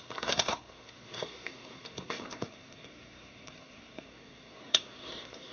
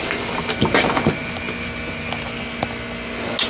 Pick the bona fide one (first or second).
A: second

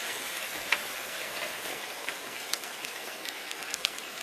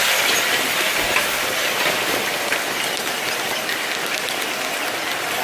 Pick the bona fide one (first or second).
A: second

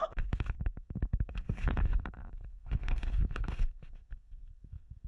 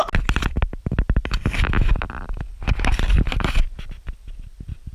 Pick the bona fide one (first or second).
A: second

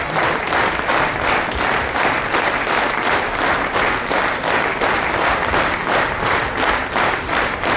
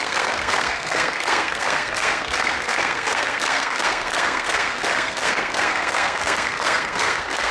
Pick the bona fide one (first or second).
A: first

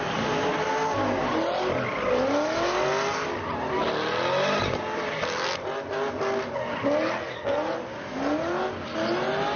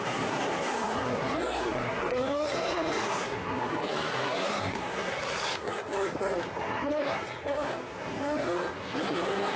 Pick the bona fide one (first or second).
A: first